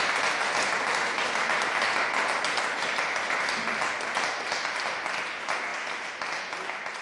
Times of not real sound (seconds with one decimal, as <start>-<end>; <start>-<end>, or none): none